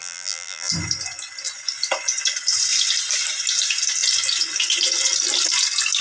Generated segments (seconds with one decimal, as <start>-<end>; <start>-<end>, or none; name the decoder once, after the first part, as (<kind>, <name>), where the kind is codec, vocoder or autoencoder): 0.0-0.7 (vocoder, BigVGAN v2)

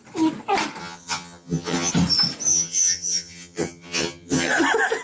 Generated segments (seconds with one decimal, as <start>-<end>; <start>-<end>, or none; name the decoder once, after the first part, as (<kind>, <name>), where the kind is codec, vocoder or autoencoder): 0.8-1.9 (vocoder, HiFi-GAN); 2.5-4.5